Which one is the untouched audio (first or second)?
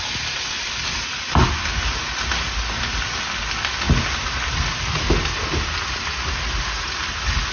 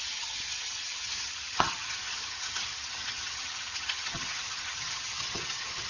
first